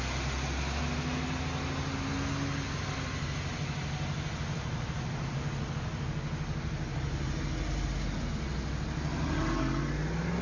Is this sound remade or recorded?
recorded